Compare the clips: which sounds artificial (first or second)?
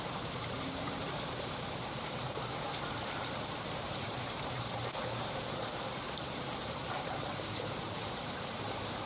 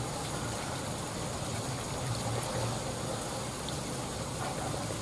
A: first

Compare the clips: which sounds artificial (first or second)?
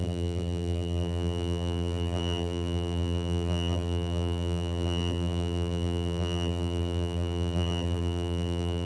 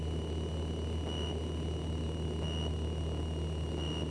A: first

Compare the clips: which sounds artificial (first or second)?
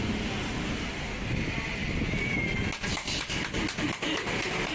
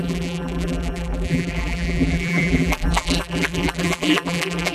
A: second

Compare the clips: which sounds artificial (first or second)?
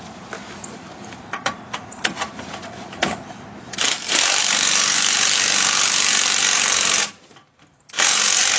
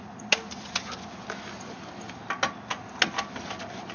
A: first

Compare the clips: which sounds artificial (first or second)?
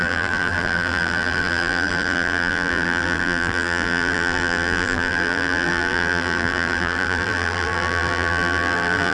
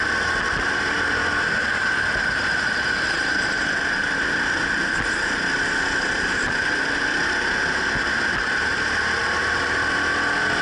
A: first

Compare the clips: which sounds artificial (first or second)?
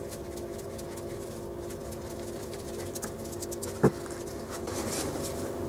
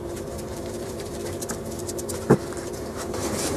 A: second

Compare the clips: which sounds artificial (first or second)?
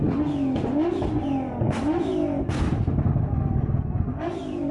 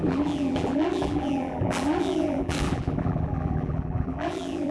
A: second